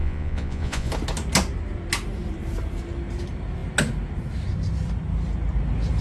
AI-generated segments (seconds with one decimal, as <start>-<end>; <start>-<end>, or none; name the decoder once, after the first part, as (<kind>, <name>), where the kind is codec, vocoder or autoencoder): 0.0-0.9 (vocoder, Vocos)